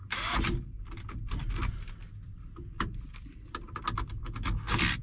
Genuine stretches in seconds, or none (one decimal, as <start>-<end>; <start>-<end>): 0.0-2.0; 3.8-5.0